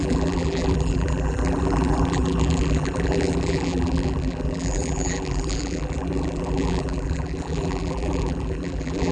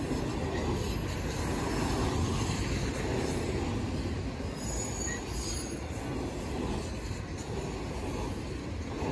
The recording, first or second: second